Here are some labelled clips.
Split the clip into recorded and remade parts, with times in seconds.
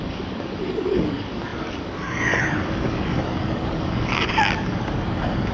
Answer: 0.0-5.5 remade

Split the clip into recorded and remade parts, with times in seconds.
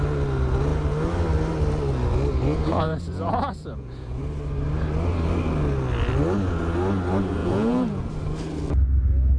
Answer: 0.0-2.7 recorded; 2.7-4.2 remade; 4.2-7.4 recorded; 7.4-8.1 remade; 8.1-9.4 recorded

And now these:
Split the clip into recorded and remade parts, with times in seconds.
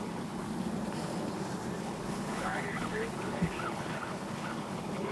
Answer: 0.0-0.4 remade; 0.4-1.8 recorded; 1.8-5.1 remade